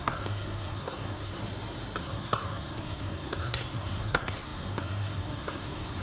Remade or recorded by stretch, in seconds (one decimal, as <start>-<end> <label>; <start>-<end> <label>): 0.0-1.4 remade; 1.4-2.0 recorded; 2.0-6.0 remade